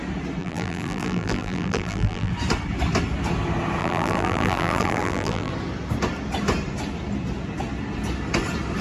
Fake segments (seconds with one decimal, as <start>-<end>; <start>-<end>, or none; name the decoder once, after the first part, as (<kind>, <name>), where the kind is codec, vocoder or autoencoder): 0.4-2.3 (vocoder, BigVGAN v2); 3.8-5.5